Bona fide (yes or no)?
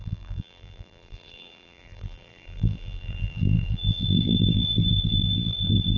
no